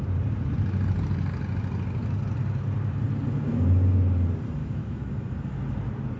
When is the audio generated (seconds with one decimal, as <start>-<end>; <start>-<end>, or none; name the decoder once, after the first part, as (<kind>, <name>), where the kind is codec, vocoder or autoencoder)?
4.6-5.1 (autoencoder, DAC-VAE)